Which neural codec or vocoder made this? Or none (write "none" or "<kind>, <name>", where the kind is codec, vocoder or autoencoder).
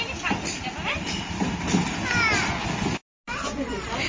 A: none